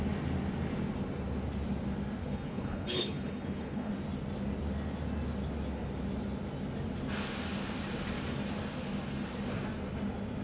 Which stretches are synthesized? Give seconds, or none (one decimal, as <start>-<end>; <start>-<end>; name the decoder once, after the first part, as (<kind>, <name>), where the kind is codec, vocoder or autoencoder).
2.2-3.9 (codec, HILCodec)